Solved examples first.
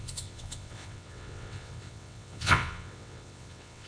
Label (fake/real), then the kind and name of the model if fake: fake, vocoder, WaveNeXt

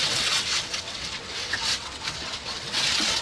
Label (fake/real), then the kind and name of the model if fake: fake, vocoder, WaveNeXt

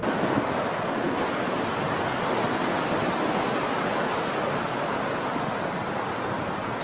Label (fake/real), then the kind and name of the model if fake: real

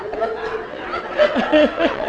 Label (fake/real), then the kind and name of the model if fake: fake, vocoder, WaveNeXt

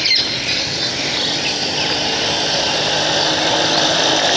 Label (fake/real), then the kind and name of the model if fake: real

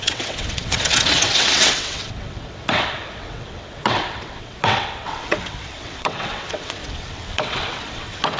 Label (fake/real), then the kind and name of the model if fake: fake, vocoder, WaveNeXt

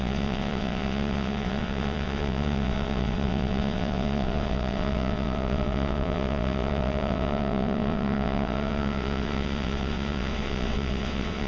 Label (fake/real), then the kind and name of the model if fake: fake, vocoder, WaveNeXt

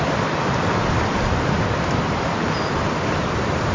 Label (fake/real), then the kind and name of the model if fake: real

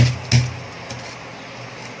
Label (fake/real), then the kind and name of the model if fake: real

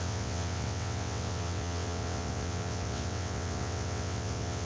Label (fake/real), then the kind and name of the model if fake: fake, vocoder, WaveNeXt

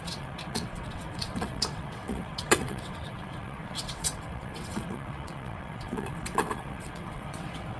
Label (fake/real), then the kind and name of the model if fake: fake, vocoder, WaveNeXt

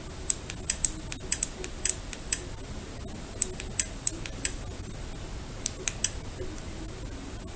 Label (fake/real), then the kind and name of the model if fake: real